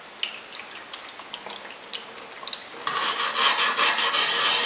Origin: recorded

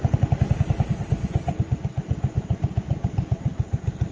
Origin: recorded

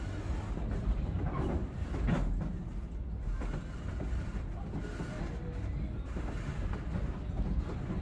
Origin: recorded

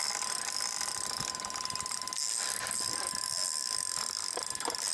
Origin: recorded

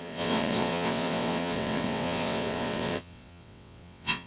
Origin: remade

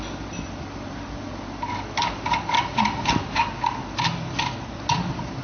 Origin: recorded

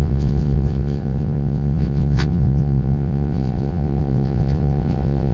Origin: remade